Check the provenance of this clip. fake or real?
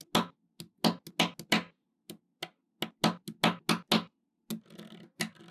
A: real